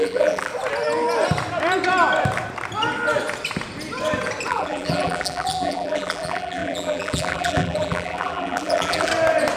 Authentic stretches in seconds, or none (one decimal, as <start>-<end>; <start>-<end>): 0.5-4.5; 9.1-9.6